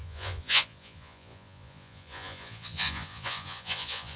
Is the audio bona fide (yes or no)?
no